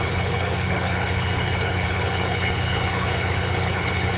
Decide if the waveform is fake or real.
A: fake